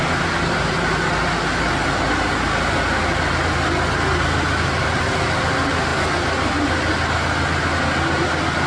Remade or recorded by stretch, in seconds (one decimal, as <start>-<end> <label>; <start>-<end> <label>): 0.0-8.7 recorded